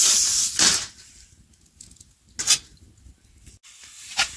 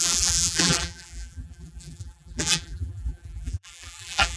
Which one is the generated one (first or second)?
second